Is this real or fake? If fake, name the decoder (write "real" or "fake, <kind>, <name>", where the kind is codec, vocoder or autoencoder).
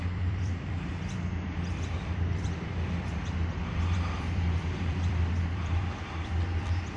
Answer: fake, vocoder, BigVGAN v2